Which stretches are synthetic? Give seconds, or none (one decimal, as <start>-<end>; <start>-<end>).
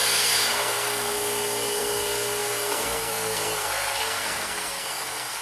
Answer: 0.0-5.4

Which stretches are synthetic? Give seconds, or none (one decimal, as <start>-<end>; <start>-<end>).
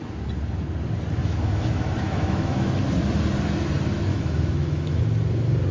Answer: 1.2-2.7; 4.1-5.0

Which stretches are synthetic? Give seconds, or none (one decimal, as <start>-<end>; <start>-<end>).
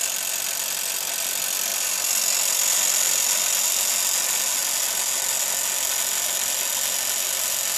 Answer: none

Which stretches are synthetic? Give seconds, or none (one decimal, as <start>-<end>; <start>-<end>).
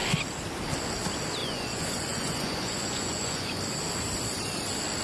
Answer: 1.4-3.6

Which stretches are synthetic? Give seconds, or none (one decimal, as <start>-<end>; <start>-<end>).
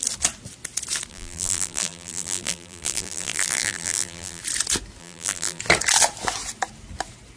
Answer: 1.1-4.4; 5.0-5.6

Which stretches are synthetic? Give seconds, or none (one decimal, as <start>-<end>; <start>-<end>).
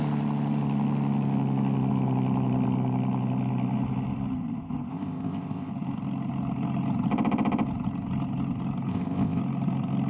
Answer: 4.9-5.7; 8.9-9.4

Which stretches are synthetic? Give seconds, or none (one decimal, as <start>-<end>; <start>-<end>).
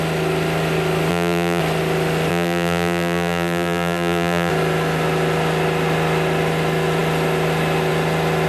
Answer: 1.1-1.6; 2.3-4.5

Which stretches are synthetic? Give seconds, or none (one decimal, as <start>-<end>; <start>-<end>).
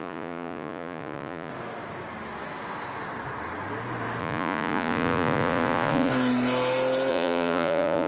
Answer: 0.0-1.5; 4.2-6.1; 7.1-8.1